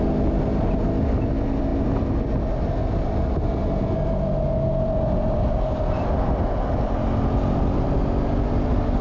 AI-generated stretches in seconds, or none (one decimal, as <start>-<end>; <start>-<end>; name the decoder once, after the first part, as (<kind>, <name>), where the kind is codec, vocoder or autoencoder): none